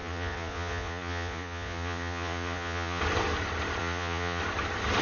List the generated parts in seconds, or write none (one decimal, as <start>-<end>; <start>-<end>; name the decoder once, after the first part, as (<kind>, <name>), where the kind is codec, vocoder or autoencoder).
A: 0.0-3.0 (vocoder, Vocos); 3.8-4.4